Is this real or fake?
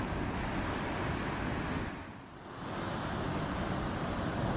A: real